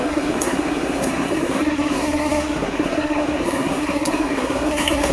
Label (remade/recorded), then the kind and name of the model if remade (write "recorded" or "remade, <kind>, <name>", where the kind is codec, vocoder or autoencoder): remade, codec, SNAC